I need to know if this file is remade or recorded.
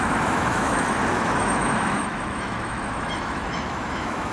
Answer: remade